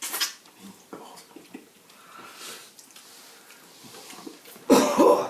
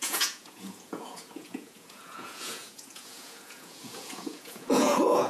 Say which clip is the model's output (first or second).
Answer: second